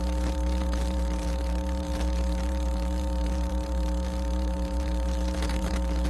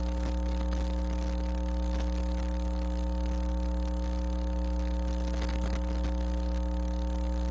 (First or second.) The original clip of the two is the second